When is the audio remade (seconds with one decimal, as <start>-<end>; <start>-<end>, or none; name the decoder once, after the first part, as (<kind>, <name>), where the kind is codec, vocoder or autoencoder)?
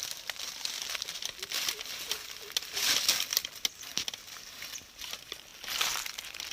none